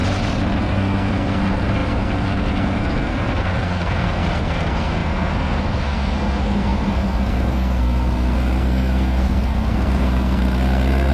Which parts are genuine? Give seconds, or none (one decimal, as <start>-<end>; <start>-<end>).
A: 0.0-0.6